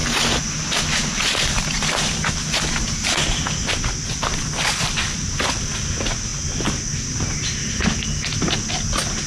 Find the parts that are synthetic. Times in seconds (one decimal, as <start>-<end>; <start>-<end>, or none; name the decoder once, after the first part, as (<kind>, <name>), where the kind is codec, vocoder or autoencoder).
none